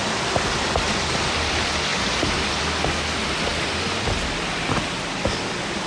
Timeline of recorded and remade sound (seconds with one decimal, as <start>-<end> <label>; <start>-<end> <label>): 0.0-1.9 recorded; 1.9-2.6 remade; 2.6-5.9 recorded